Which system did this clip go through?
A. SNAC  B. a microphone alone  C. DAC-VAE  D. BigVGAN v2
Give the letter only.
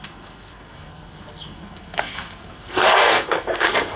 A